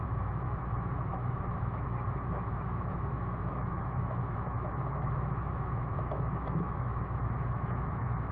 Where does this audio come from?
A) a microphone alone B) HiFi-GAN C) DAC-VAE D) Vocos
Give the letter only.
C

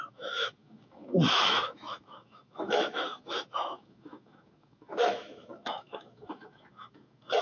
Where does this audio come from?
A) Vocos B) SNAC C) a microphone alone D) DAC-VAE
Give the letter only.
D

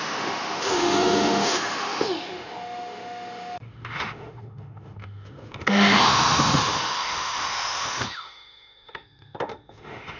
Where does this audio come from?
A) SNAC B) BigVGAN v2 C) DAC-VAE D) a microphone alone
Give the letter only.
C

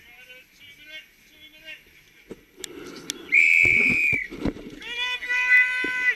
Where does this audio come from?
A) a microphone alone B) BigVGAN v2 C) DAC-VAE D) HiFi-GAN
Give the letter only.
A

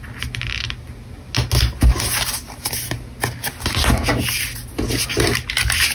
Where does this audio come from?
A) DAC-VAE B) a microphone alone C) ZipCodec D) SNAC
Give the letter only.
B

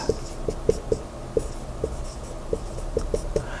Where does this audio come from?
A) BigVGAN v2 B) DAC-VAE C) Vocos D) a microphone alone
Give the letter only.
D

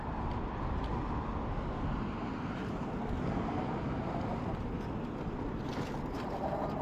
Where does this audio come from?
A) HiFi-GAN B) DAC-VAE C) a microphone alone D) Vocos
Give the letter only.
C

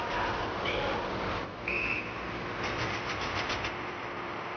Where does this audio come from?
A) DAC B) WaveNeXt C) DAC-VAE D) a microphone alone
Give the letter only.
D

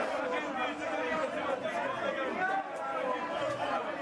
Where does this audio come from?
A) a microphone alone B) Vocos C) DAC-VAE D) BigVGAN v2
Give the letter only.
A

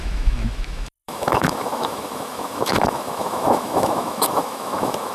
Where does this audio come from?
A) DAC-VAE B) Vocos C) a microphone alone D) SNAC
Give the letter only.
A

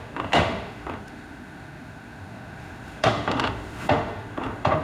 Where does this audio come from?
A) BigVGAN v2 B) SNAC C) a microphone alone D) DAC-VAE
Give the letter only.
D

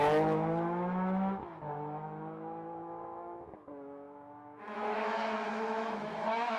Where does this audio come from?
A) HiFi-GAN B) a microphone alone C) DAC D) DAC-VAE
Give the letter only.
D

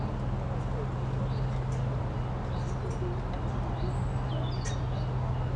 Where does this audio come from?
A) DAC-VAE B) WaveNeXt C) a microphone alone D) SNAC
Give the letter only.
C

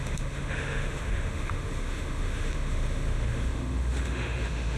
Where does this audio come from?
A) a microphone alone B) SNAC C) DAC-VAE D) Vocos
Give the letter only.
C